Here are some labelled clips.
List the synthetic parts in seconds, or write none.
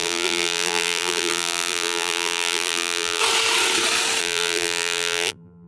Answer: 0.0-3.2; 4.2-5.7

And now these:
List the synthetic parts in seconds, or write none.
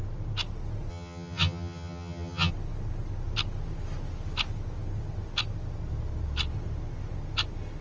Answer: 0.9-2.5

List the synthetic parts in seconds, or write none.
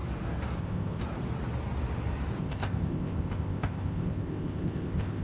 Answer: 0.6-1.0; 2.4-5.2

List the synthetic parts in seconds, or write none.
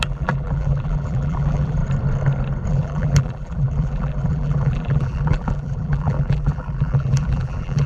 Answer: 0.0-1.8; 2.7-7.9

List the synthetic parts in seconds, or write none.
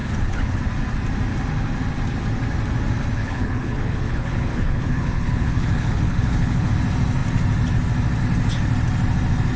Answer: 0.0-0.6; 3.2-6.7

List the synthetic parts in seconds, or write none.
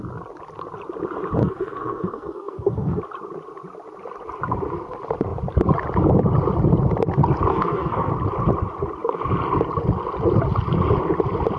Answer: 1.4-3.0; 7.5-8.1